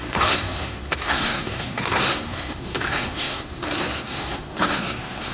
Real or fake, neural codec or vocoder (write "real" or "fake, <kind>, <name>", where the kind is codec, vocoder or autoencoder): fake, codec, SNAC